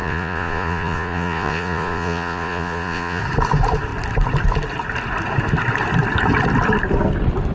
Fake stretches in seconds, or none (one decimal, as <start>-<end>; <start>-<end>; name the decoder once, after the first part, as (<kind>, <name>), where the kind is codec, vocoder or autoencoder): 0.0-3.2 (vocoder, Vocos)